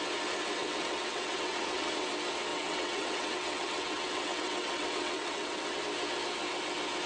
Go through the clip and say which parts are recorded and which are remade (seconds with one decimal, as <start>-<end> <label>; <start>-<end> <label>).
0.0-0.6 recorded; 0.6-2.1 remade; 2.1-2.5 recorded; 2.5-5.8 remade; 5.8-7.1 recorded